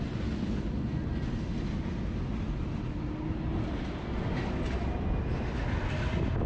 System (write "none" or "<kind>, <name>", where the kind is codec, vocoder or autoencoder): none